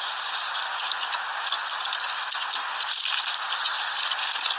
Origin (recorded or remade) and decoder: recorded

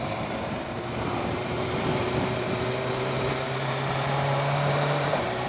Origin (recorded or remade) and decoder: remade, vocoder, BigVGAN v2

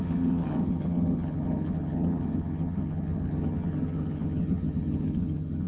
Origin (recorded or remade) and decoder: remade, vocoder, HiFi-GAN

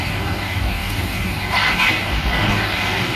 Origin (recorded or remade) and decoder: remade, codec, DAC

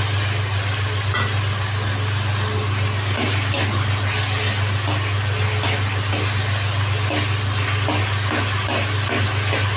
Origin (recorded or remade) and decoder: recorded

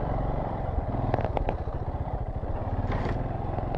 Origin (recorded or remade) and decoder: remade, vocoder, BigVGAN v2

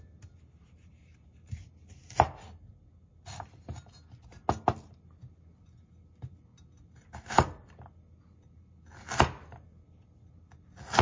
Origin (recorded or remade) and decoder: recorded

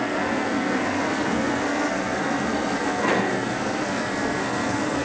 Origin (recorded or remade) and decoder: remade, codec, SNAC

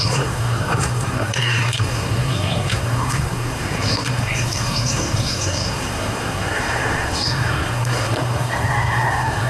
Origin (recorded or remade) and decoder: remade, codec, SNAC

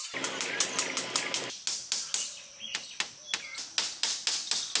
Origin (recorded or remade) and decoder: recorded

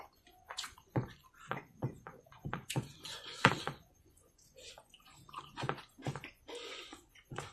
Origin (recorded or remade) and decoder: remade, vocoder, Vocos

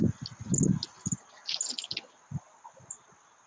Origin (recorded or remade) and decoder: recorded